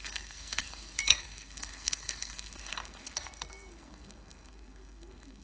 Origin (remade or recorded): remade